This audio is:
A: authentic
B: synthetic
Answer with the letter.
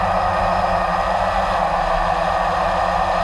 A